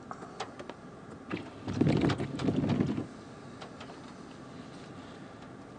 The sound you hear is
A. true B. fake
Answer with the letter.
A